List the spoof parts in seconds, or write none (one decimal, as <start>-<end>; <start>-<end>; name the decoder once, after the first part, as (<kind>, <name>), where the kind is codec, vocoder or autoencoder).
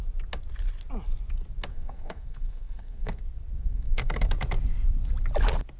1.7-3.2 (codec, SNAC); 3.6-4.3